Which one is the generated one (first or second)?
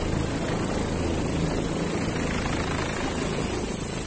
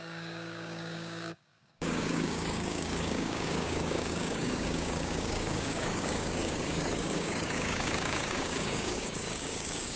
second